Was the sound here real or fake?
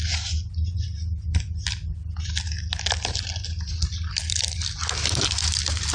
real